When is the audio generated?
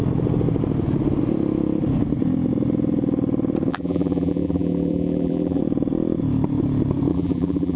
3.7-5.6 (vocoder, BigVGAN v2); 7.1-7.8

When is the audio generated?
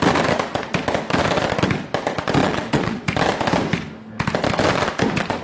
2.4-3.0 (vocoder, WaveNeXt)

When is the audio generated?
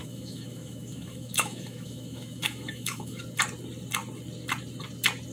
0.0-3.2 (autoencoder, DAC-VAE)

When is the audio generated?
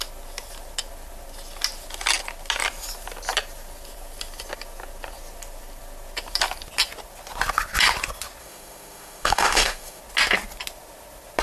8.4-10.0 (autoencoder, DAC-VAE)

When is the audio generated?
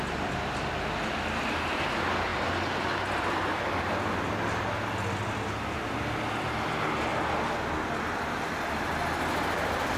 7.1-10.0 (vocoder, BigVGAN v2)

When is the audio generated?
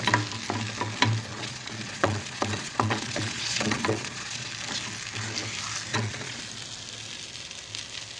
1.3-4.5 (vocoder, Vocos); 5.9-6.4